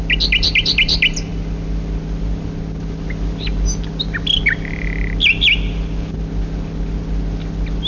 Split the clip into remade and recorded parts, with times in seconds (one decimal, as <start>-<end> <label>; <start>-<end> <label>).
0.0-7.9 recorded